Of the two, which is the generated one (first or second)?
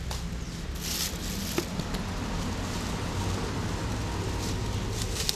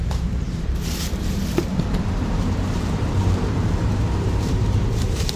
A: second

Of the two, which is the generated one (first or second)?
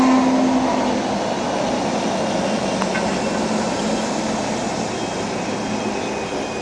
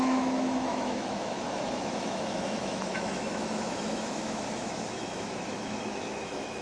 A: second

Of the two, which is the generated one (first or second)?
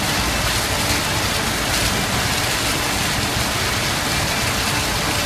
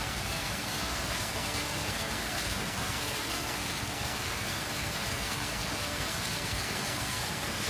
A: second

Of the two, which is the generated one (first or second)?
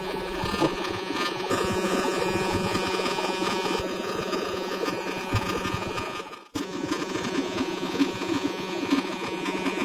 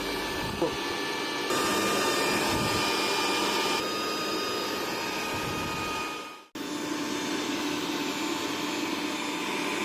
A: first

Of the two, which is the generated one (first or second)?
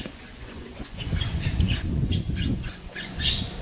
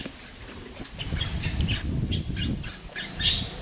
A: first